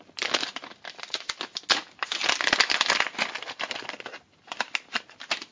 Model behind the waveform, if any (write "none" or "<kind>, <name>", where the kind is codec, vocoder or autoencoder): none